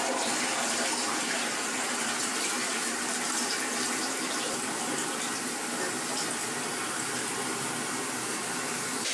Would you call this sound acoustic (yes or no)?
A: yes